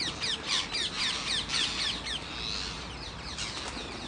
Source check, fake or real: real